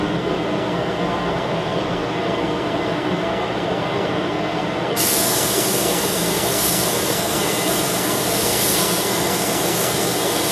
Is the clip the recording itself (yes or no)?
no